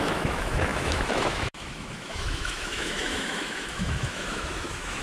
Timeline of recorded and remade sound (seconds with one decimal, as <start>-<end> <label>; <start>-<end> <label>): 0.0-5.0 remade